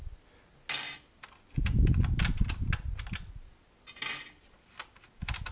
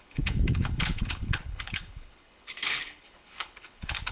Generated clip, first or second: second